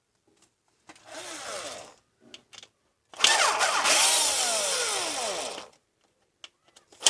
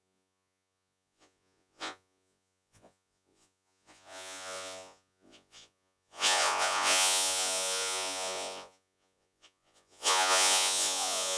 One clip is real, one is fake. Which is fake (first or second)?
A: second